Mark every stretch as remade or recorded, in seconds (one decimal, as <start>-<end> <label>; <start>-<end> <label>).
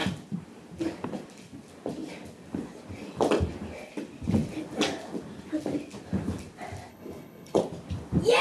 0.0-6.9 recorded; 6.9-7.6 remade; 7.6-8.4 recorded